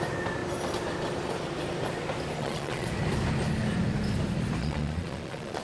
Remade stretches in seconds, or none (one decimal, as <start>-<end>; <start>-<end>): 2.4-2.9; 4.6-5.6